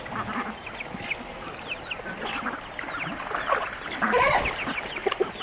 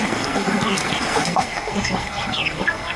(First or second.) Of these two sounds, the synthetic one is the second